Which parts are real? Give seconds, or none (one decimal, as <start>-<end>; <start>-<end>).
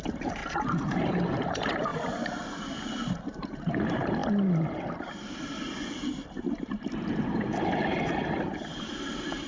0.4-0.9; 1.9-3.2; 4.2-7.2